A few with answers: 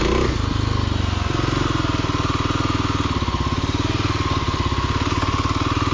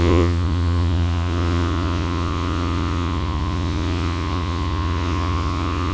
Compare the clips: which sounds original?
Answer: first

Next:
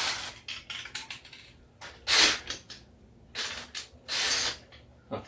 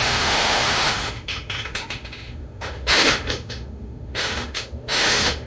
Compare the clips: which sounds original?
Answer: first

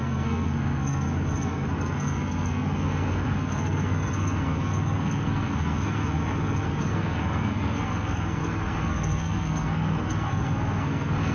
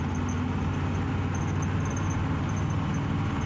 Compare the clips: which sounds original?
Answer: second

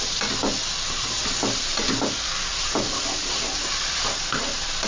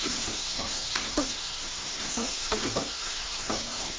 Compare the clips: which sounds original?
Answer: first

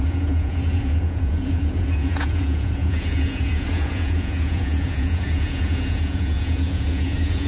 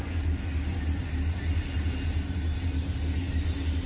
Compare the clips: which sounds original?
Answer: second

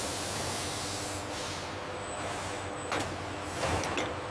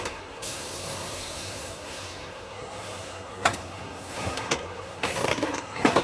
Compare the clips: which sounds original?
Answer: first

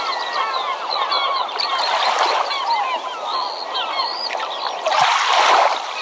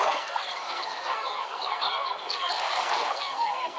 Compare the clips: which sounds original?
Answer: first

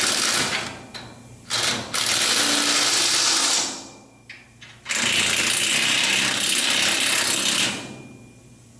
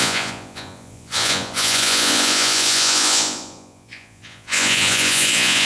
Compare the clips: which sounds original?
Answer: first